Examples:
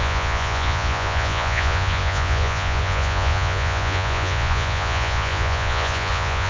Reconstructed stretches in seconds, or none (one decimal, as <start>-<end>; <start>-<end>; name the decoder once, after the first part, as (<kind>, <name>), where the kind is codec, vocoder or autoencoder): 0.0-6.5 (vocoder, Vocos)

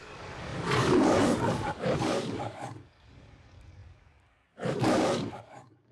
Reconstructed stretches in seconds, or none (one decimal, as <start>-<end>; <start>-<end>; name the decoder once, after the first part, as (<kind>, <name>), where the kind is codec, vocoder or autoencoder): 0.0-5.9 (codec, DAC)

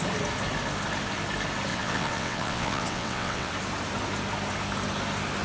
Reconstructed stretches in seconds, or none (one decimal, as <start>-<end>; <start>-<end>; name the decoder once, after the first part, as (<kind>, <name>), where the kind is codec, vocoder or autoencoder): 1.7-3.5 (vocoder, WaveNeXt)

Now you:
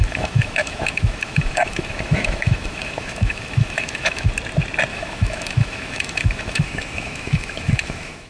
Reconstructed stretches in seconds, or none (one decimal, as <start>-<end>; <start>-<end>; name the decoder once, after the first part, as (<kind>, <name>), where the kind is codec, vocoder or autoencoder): 0.0-4.3 (autoencoder, DAC-VAE); 4.9-8.3